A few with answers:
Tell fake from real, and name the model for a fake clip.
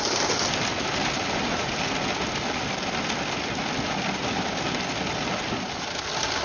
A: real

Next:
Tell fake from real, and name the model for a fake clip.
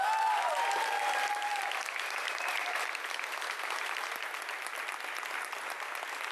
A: real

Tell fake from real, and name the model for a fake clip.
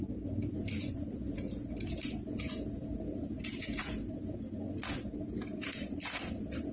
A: fake, vocoder, Vocos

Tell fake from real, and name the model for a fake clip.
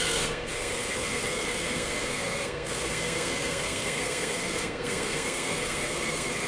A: fake, codec, SNAC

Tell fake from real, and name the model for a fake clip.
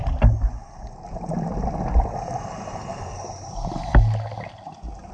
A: real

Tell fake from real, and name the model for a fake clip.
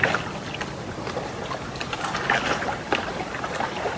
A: real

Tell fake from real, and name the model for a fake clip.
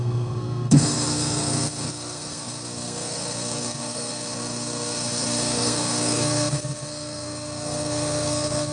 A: fake, codec, SNAC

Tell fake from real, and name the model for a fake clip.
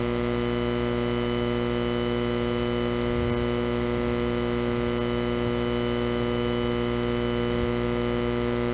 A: real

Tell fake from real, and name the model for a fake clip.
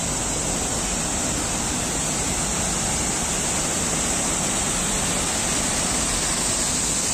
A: real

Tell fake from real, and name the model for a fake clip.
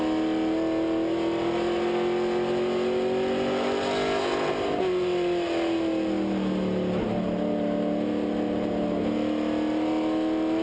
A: real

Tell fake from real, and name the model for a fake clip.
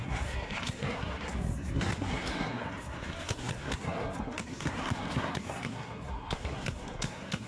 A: fake, codec, SNAC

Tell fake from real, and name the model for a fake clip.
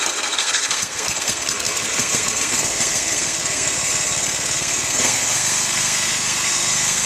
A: fake, codec, SNAC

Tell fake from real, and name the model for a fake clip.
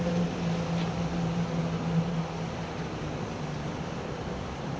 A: real